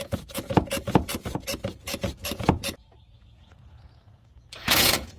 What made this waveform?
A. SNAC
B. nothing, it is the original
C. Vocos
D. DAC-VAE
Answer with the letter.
C